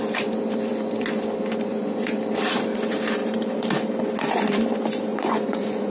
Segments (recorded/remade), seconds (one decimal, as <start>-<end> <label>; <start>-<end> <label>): 0.0-1.7 recorded; 1.7-2.2 remade; 2.2-5.1 recorded; 5.1-5.9 remade